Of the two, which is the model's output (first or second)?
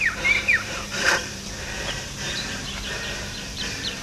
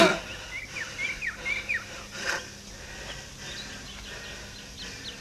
first